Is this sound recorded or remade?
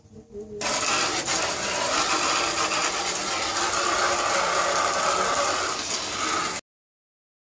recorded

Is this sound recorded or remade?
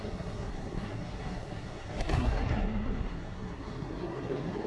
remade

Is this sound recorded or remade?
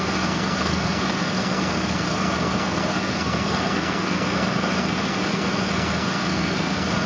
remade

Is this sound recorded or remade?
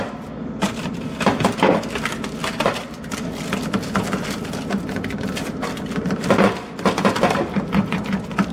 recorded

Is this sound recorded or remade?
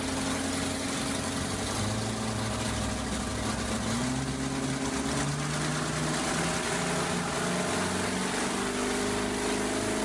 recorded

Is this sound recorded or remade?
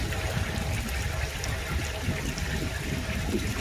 recorded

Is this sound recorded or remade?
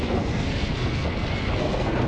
remade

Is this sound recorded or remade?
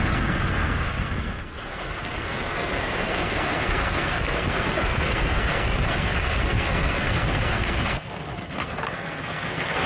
remade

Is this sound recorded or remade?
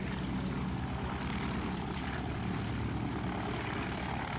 recorded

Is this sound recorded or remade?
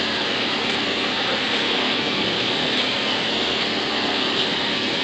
remade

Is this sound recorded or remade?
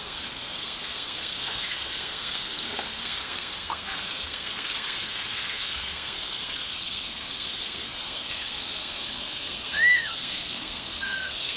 remade